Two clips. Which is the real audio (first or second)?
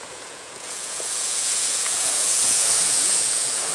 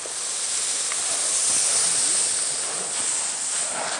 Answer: second